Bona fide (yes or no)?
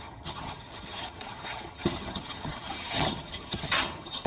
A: no